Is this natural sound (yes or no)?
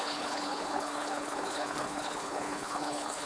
no